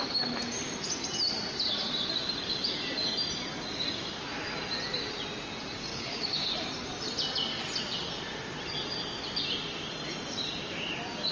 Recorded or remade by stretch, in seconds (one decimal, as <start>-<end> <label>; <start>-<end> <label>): 0.0-5.9 recorded; 5.9-6.5 remade; 6.5-11.3 recorded